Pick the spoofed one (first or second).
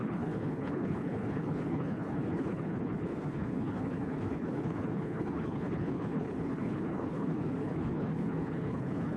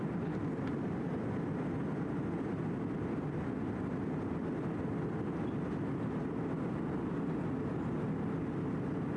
first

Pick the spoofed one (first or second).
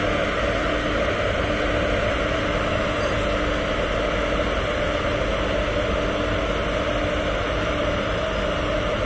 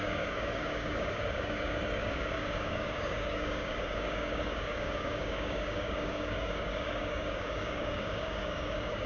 second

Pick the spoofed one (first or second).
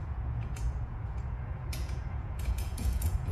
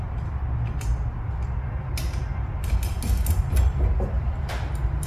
first